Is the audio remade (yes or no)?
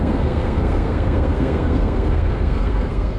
yes